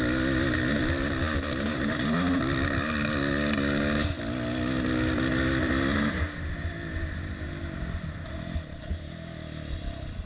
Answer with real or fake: real